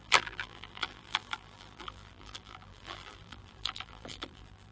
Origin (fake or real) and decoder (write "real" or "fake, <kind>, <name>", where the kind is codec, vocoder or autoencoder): fake, vocoder, BigVGAN v2